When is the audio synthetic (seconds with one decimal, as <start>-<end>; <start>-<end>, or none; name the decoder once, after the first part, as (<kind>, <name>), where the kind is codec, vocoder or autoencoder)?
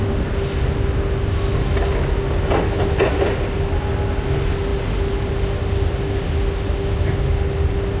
none